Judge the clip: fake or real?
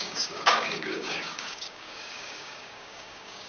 fake